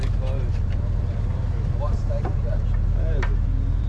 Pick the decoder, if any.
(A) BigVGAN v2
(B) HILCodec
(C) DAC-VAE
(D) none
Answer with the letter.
A